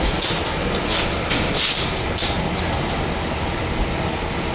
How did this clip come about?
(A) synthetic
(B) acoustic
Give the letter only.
B